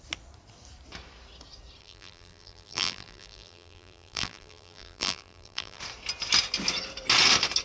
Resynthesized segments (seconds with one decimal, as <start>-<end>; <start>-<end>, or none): 1.8-5.8